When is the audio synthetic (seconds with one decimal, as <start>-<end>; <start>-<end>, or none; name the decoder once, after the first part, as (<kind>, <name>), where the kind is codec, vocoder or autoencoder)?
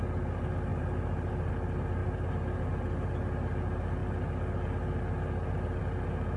none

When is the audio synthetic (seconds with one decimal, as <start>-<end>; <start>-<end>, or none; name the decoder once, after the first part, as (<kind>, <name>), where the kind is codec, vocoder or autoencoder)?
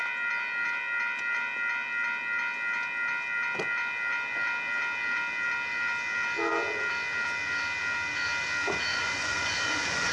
8.9-10.1 (vocoder, Vocos)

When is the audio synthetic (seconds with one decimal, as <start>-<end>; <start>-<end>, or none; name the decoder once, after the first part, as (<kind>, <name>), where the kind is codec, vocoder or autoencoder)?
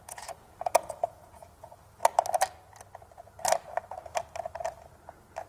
0.0-2.0 (vocoder, Vocos)